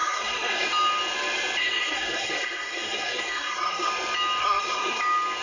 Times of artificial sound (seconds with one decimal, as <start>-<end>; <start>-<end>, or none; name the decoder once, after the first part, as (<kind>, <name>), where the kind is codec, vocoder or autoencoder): 0.0-0.7 (codec, SNAC); 1.6-3.9; 4.4-5.0